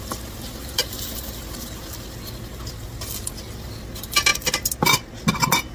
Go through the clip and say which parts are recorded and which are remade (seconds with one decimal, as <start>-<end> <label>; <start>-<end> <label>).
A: 0.0-5.7 recorded